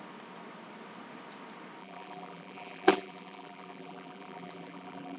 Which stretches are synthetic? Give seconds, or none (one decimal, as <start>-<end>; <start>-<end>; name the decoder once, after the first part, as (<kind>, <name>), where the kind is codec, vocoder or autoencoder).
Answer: 1.8-5.2 (vocoder, BigVGAN v2)